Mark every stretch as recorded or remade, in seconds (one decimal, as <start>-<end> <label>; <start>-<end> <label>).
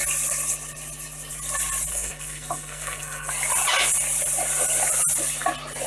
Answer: 0.0-1.9 recorded; 1.9-3.3 remade; 3.3-5.9 recorded